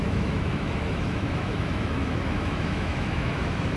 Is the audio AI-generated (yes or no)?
yes